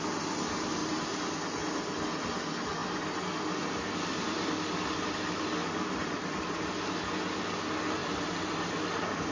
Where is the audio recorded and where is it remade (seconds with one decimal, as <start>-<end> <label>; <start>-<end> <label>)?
0.0-0.8 recorded; 0.8-1.3 remade; 1.3-5.6 recorded; 5.6-6.7 remade; 6.7-8.0 recorded; 8.0-8.8 remade; 8.8-9.3 recorded

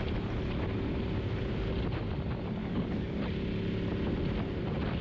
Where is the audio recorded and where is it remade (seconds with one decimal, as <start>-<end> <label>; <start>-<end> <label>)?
0.0-2.6 recorded; 2.6-3.2 remade; 3.2-5.0 recorded

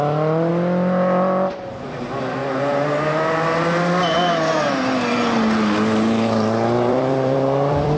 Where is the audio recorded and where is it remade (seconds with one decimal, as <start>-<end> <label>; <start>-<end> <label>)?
0.0-0.5 remade; 0.5-1.5 recorded; 1.5-2.4 remade; 2.4-6.9 recorded; 6.9-8.0 remade

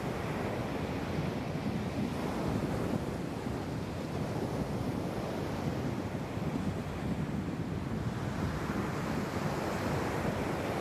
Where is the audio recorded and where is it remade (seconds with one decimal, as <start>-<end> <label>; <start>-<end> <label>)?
0.0-2.6 recorded; 2.6-3.4 remade; 3.4-10.8 recorded

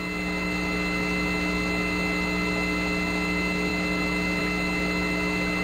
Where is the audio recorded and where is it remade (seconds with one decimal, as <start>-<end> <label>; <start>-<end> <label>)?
0.0-5.6 recorded

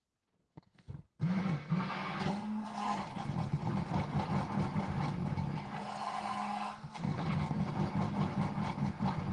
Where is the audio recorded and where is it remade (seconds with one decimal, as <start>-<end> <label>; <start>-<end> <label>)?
0.0-0.4 recorded; 0.4-0.9 remade; 0.9-1.4 recorded; 1.4-3.1 remade; 3.1-6.0 recorded; 6.0-7.6 remade; 7.6-9.3 recorded

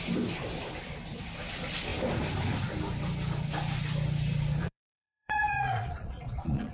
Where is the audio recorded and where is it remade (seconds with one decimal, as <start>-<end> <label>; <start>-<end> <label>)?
0.0-4.6 recorded; 4.6-6.7 remade

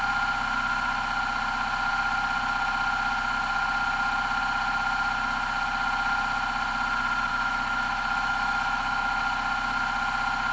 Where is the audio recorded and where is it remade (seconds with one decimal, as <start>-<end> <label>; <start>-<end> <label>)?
0.0-7.3 recorded; 7.3-9.2 remade; 9.2-10.5 recorded